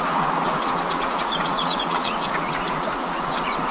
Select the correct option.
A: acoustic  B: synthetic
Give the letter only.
B